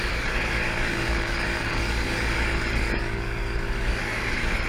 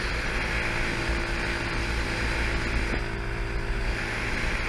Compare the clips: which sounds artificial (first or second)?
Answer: first